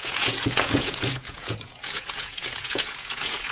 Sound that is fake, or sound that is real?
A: fake